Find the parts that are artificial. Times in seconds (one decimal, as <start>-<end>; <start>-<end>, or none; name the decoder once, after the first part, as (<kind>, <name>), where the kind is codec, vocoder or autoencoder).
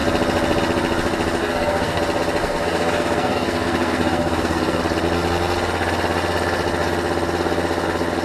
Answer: 1.4-2.0 (codec, SNAC); 2.4-4.8